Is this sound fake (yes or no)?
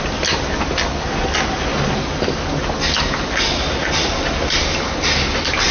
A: no